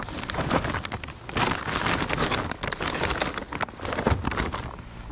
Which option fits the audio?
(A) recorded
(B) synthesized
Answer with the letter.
A